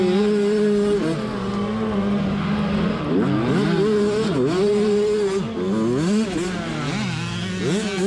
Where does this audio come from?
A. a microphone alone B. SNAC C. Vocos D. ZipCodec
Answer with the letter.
A